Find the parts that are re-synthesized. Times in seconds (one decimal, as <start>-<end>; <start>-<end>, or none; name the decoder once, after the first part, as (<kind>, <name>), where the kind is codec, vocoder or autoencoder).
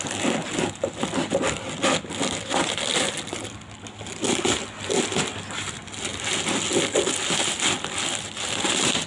none